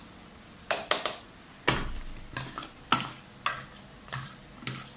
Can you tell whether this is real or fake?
real